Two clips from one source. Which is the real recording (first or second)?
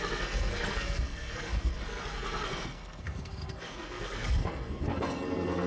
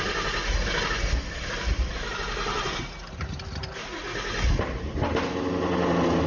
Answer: second